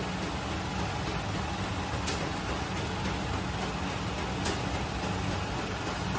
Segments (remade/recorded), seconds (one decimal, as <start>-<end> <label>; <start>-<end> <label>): 0.0-6.2 recorded